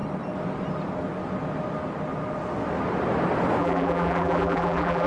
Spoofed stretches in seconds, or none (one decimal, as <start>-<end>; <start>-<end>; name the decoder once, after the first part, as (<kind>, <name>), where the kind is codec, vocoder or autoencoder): 3.6-5.1 (vocoder, BigVGAN v2)